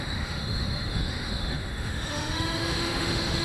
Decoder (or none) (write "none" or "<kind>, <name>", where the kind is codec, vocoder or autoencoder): autoencoder, DAC-VAE